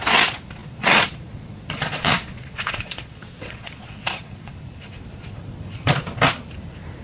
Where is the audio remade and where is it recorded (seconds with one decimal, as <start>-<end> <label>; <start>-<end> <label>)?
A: 0.0-0.6 recorded; 0.6-4.5 remade; 4.5-7.0 recorded